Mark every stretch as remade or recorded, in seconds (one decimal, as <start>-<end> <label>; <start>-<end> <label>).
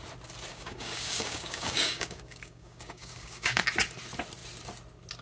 0.0-0.5 recorded; 0.5-3.6 remade; 3.6-5.2 recorded